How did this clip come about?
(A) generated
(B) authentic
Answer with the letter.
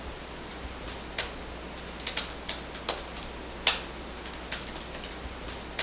B